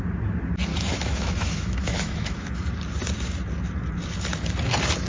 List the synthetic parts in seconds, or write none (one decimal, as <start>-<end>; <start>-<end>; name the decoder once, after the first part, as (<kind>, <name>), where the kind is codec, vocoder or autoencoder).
0.7-2.7 (autoencoder, DAC-VAE)